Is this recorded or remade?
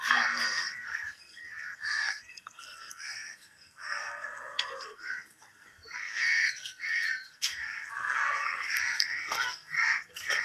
remade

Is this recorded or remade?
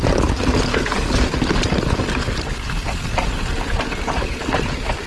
recorded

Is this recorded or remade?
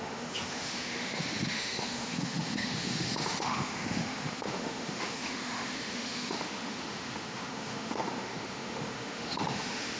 remade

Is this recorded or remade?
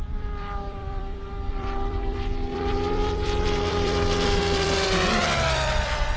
remade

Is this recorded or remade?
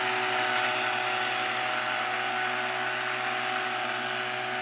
recorded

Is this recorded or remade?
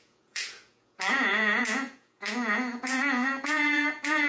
remade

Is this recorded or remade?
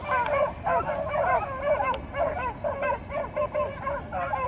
recorded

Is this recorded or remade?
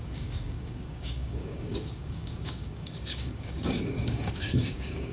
remade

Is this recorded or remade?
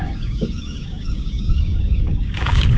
remade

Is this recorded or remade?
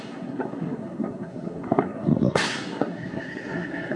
remade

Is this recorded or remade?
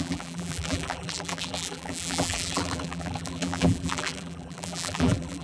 remade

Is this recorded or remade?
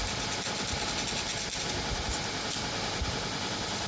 recorded